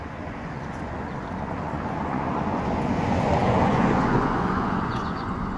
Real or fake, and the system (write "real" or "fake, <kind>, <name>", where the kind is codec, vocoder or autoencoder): fake, vocoder, Vocos